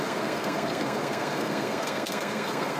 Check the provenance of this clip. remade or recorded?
remade